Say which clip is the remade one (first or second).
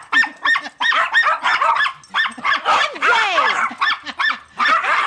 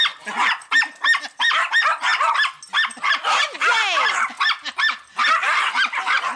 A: first